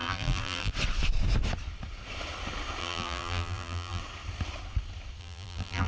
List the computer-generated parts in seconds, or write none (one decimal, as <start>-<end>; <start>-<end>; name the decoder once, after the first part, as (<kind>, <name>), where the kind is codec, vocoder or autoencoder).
0.0-0.7 (vocoder, BigVGAN v2); 2.8-4.0; 5.2-5.9